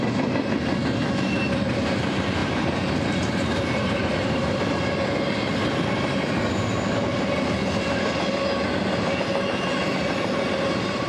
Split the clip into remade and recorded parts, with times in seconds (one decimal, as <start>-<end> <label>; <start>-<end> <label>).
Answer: 0.0-2.4 recorded; 2.4-4.6 remade; 4.6-11.1 recorded